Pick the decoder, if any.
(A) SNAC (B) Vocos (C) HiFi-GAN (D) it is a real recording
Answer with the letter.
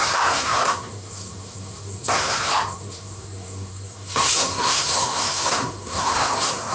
A